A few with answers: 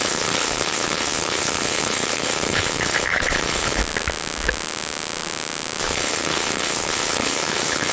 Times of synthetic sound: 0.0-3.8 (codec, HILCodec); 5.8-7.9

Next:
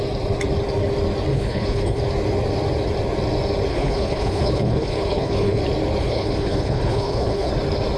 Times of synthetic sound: 1.3-2.0 (codec, HILCodec); 3.7-5.6; 6.0-7.5

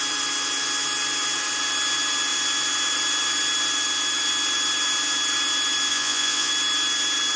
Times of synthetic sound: 5.9-6.5 (vocoder, Vocos)

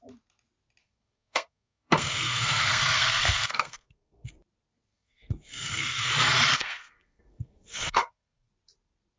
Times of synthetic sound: 0.8-4.3 (codec, SNAC); 4.9-6.1; 6.5-8.5

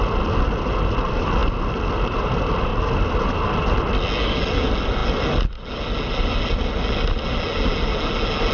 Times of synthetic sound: none

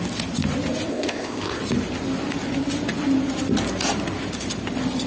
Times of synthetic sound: 0.9-1.6 (codec, ZipCodec)

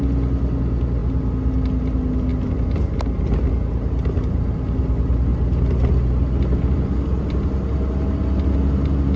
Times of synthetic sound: none